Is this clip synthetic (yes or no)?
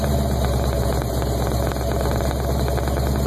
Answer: no